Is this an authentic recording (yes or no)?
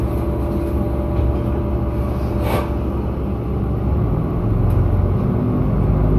yes